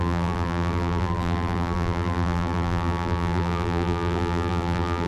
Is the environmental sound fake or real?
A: fake